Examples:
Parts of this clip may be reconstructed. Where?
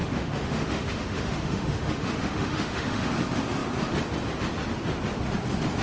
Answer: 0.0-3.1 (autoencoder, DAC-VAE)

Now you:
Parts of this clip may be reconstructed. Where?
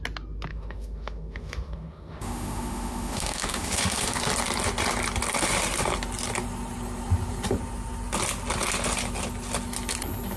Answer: 0.5-4.2 (autoencoder, DAC-VAE)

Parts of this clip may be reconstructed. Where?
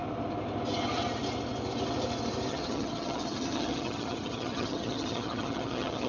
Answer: 2.5-6.1 (vocoder, HiFi-GAN)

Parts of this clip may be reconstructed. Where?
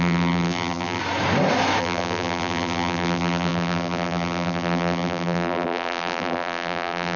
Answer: 0.0-1.0 (vocoder, BigVGAN v2); 1.8-7.2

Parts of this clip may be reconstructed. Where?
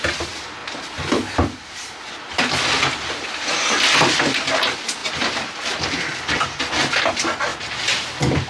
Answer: none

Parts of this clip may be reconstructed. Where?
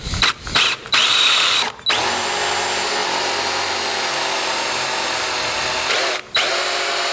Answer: none